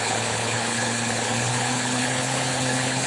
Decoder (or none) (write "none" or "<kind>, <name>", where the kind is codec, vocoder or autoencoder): codec, HILCodec